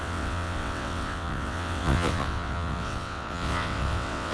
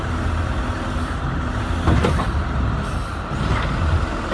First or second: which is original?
second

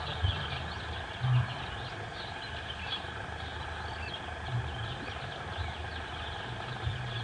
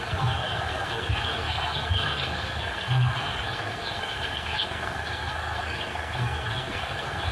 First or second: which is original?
first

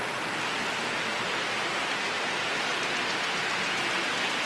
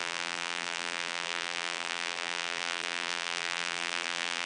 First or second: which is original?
first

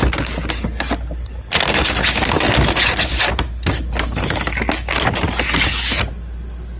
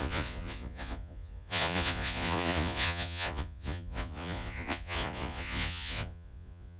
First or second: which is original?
first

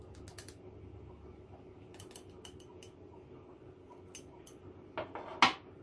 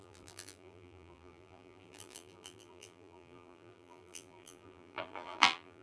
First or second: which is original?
first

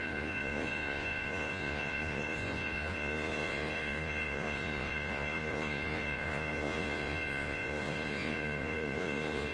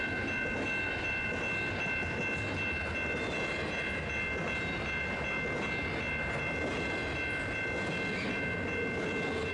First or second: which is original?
second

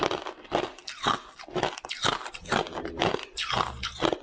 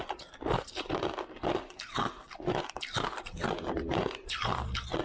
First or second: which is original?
first